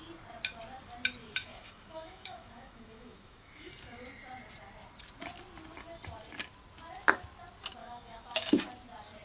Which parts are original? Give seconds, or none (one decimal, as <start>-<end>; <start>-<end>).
0.0-1.2; 3.7-7.8; 8.7-9.2